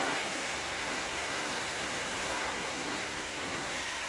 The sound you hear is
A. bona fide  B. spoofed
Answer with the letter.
B